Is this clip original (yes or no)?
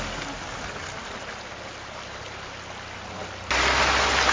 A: yes